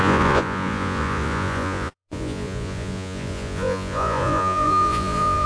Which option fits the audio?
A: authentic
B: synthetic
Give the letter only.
B